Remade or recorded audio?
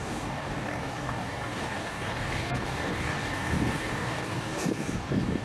remade